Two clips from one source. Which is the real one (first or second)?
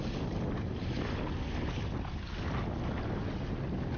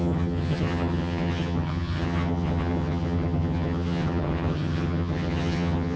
first